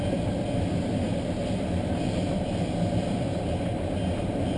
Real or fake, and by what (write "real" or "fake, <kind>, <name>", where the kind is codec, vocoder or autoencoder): real